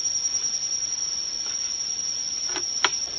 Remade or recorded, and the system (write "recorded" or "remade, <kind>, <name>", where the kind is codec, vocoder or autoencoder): recorded